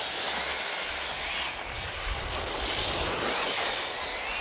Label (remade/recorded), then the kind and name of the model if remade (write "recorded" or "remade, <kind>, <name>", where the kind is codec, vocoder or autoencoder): recorded